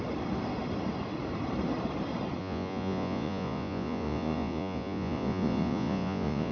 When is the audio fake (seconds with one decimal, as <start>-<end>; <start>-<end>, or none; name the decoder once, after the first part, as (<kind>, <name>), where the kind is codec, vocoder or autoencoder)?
2.4-6.5 (vocoder, Vocos)